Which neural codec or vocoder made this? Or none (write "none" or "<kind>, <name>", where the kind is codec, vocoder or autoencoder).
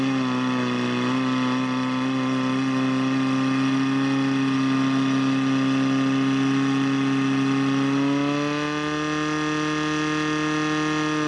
none